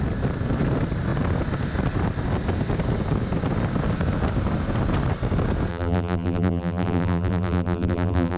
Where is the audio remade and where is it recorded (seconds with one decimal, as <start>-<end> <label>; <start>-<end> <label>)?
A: 0.0-5.7 recorded; 5.7-8.4 remade